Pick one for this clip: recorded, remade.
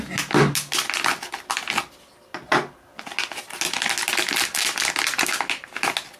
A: recorded